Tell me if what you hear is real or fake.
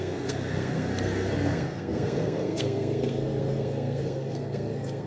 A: fake